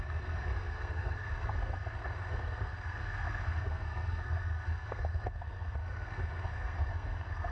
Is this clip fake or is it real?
fake